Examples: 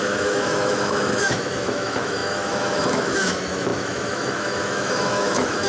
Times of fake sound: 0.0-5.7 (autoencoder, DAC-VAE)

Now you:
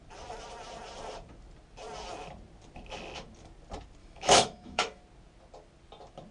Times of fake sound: 4.0-5.0 (autoencoder, DAC-VAE)

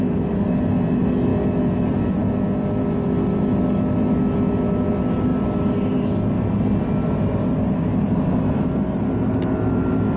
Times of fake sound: none

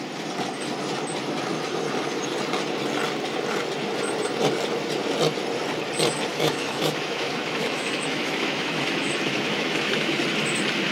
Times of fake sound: 6.3-10.2 (autoencoder, DAC-VAE)

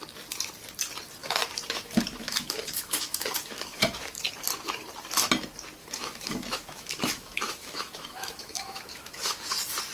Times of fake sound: 1.2-4.3 (autoencoder, DAC-VAE); 5.8-9.4

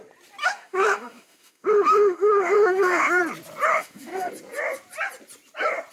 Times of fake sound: 0.4-3.2 (autoencoder, DAC-VAE); 3.7-4.3

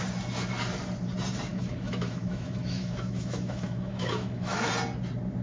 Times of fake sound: 1.5-4.7 (autoencoder, DAC-VAE)